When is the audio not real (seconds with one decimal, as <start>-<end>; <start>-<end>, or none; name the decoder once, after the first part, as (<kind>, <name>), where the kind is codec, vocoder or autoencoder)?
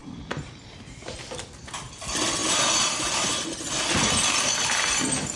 0.0-0.6 (vocoder, BigVGAN v2)